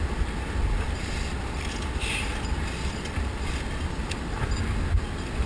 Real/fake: real